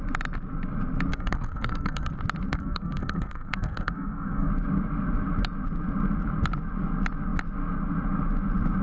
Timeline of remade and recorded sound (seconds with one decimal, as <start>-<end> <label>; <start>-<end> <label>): 0.0-1.1 recorded; 1.1-2.1 remade; 2.1-2.5 recorded; 2.5-4.5 remade; 4.5-8.8 recorded